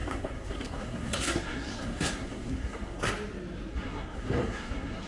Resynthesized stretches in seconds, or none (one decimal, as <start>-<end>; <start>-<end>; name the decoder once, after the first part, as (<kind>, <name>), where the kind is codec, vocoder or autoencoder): 0.0-3.1 (codec, SNAC); 3.7-5.1